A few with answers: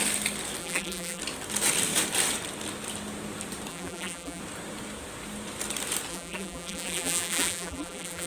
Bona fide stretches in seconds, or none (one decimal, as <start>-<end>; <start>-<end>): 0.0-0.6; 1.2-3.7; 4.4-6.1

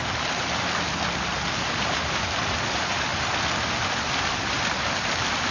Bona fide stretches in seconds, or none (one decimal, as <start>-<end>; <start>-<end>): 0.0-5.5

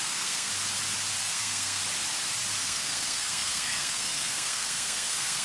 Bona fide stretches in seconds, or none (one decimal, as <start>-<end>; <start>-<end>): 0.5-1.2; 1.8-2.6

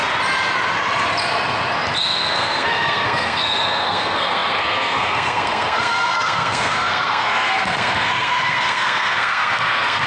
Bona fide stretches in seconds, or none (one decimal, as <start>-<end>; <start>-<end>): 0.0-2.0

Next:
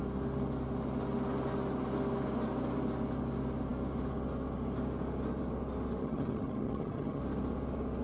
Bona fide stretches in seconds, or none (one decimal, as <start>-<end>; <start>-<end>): 0.0-6.0; 7.2-8.0